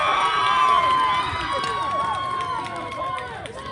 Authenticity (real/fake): real